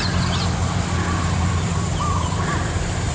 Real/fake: real